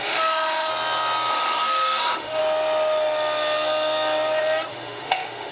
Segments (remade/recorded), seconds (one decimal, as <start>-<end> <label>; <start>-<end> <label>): 0.0-0.7 remade; 0.7-1.3 recorded; 1.3-2.4 remade; 2.4-4.7 recorded; 4.7-5.5 remade